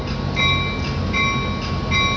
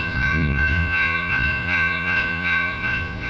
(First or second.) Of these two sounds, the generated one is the second